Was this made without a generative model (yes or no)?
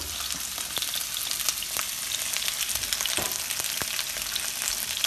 yes